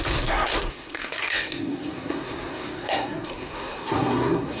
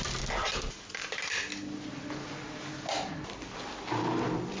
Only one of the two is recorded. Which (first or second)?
second